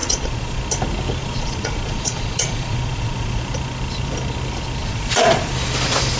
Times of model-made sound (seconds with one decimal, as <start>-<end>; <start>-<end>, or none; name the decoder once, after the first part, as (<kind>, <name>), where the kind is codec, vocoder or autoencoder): 0.0-0.6 (vocoder, Vocos); 1.2-3.4; 4.8-5.5